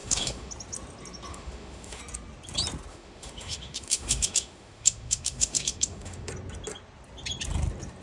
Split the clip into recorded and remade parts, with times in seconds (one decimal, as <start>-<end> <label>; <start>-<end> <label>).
0.0-0.5 remade; 0.5-1.3 recorded; 1.3-2.0 remade; 2.0-2.9 recorded; 2.9-6.3 remade; 6.3-8.0 recorded